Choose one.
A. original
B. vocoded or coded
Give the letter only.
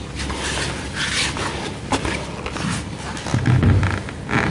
A